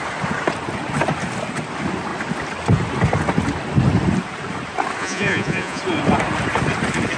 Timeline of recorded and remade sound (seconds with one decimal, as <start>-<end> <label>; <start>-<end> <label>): 0.0-5.0 recorded; 5.0-5.8 remade; 5.8-7.2 recorded